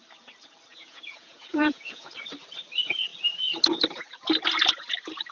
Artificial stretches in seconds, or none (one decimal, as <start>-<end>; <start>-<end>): 0.7-2.1